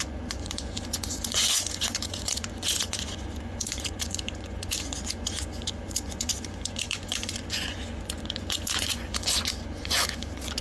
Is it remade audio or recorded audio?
remade